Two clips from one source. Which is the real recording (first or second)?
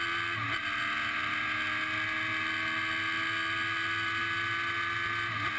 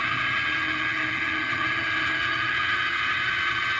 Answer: first